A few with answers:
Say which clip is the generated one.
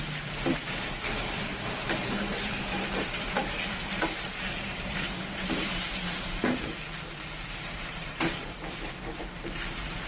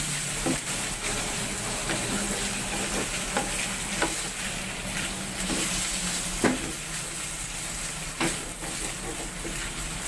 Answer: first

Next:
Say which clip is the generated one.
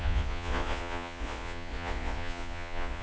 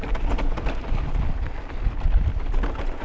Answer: first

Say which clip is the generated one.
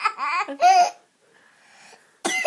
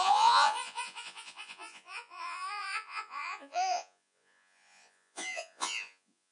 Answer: second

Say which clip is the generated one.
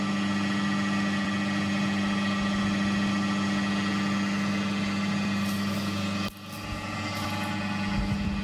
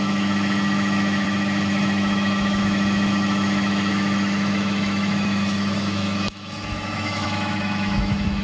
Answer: second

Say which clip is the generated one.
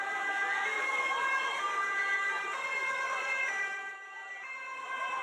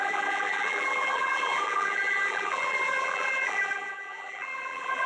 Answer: second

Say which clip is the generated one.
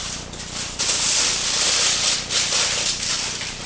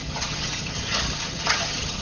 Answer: second